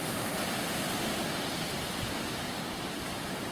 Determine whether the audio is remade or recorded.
recorded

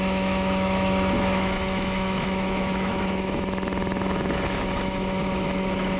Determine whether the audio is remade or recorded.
remade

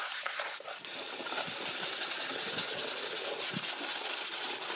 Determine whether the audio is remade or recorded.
recorded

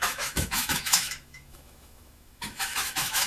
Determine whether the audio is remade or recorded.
remade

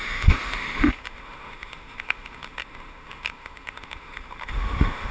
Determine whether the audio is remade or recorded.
remade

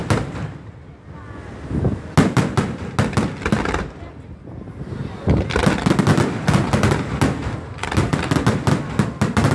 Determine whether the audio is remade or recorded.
recorded